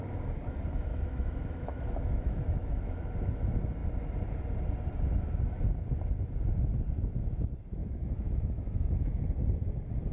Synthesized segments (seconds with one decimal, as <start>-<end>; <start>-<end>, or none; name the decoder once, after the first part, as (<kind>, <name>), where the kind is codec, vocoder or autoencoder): 0.9-3.0 (autoencoder, DAC-VAE); 7.8-9.2